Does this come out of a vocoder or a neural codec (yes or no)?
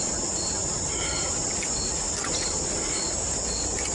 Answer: no